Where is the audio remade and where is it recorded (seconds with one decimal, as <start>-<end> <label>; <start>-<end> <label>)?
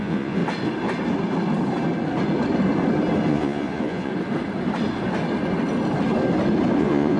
0.0-0.4 remade; 0.4-3.3 recorded; 3.3-4.1 remade; 4.1-6.8 recorded; 6.8-7.2 remade